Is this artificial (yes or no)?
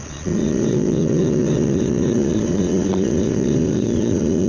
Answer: yes